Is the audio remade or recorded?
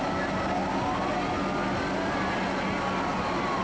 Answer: recorded